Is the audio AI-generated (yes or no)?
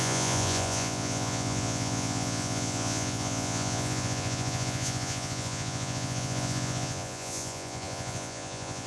yes